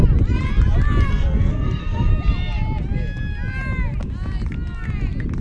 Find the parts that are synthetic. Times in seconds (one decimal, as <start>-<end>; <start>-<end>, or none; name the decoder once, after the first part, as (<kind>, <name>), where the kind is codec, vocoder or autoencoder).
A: 1.1-2.1 (codec, SNAC)